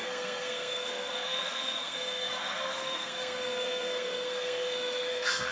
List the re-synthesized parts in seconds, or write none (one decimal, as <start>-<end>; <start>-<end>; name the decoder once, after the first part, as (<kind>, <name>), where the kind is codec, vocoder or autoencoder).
0.0-5.5 (codec, SNAC)